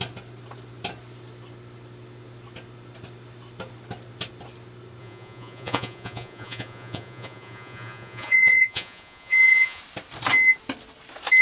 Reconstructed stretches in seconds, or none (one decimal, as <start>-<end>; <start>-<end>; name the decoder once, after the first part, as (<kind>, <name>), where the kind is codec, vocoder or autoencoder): 5.0-9.8 (vocoder, Vocos)